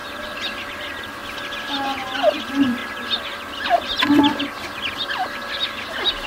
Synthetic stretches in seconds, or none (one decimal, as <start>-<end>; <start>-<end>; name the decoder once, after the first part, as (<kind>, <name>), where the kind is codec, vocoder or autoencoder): 0.7-1.2 (vocoder, BigVGAN v2); 2.4-2.8; 4.4-6.3